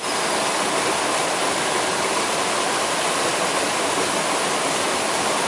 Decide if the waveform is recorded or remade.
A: recorded